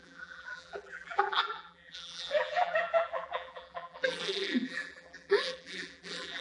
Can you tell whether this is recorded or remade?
remade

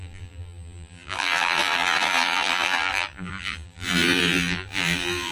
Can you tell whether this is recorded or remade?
remade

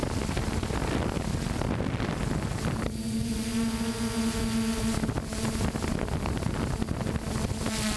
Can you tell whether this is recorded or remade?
recorded